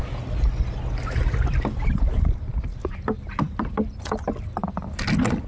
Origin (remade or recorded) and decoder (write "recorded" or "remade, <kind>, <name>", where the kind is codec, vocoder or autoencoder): recorded